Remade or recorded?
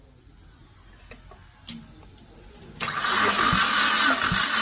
recorded